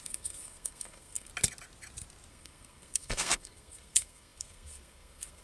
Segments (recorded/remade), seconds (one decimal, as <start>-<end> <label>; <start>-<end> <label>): 0.0-1.3 remade; 1.3-2.3 recorded; 2.3-5.4 remade